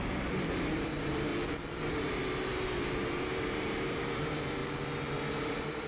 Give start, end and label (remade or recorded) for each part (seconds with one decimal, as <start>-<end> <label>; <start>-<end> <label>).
0.0-1.3 remade; 1.3-1.9 recorded; 1.9-4.6 remade; 4.6-5.4 recorded; 5.4-5.9 remade